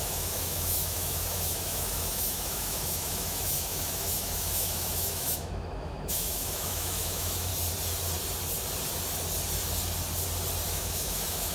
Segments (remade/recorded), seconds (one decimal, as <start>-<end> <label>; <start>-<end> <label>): 0.0-7.5 remade; 7.5-10.7 recorded; 10.7-11.5 remade